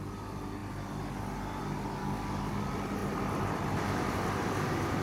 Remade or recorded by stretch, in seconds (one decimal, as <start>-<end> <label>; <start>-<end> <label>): 0.0-2.0 recorded; 2.0-2.6 remade; 2.6-5.0 recorded